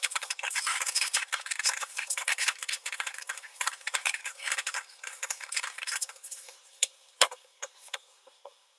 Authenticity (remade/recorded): remade